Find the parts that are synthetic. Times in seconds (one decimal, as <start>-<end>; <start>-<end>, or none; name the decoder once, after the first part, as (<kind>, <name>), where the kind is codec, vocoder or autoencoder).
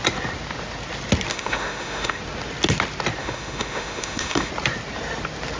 1.3-2.2 (autoencoder, DAC-VAE); 3.2-4.5